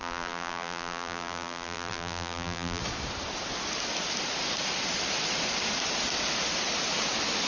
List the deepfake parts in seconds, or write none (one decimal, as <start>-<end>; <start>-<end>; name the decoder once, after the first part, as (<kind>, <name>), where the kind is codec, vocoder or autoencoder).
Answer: 0.0-2.8 (vocoder, BigVGAN v2)